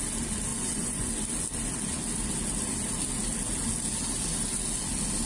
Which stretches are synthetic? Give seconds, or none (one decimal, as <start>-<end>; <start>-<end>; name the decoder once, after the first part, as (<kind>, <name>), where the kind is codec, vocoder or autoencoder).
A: 0.5-1.1 (vocoder, Vocos)